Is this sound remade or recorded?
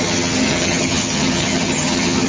remade